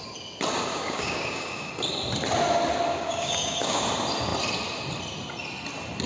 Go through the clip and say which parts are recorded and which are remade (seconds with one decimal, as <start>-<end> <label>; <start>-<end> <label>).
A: 0.0-0.7 recorded; 0.7-1.7 remade; 1.7-2.9 recorded; 2.9-3.8 remade; 3.8-6.1 recorded